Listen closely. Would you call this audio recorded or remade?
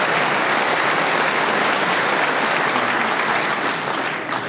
remade